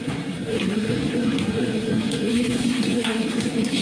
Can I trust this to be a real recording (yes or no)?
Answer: no